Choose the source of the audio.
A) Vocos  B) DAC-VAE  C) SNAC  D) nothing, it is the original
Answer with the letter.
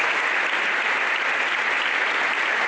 D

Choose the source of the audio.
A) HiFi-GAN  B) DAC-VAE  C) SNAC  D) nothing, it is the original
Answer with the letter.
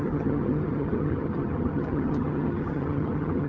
A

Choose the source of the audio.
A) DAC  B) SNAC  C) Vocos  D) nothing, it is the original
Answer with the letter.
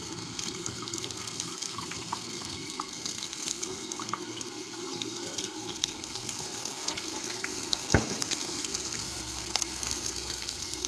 B